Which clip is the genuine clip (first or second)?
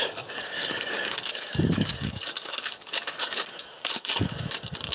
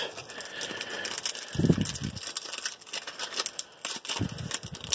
second